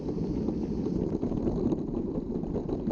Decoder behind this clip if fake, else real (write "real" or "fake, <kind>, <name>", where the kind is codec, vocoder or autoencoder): real